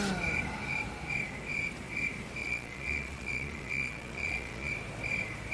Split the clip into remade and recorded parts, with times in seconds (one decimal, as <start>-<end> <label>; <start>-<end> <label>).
0.0-2.4 recorded; 2.4-4.7 remade; 4.7-5.5 recorded